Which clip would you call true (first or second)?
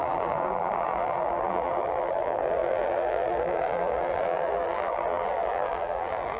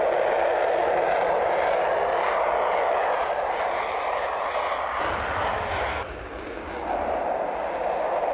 second